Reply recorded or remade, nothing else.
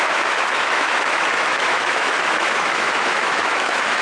remade